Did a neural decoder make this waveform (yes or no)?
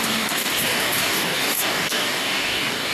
yes